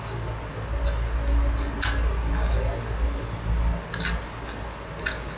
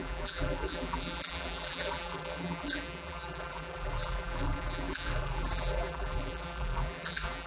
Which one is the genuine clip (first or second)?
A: first